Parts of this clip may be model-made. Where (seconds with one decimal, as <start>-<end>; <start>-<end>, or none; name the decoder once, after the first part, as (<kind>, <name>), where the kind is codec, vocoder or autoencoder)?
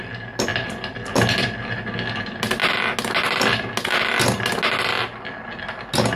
0.5-1.7 (vocoder, BigVGAN v2)